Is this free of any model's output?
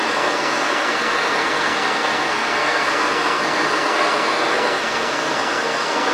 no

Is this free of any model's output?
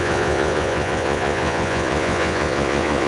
no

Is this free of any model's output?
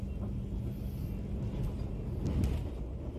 yes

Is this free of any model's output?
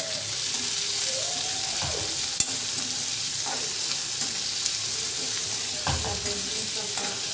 yes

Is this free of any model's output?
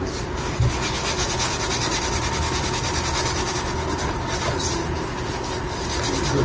yes